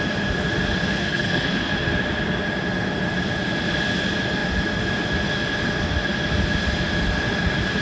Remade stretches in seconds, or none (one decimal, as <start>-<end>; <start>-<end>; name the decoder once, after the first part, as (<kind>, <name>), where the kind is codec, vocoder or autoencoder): 1.0-1.7 (codec, SNAC)